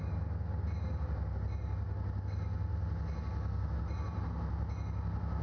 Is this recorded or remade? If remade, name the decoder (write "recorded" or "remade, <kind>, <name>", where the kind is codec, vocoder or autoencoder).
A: recorded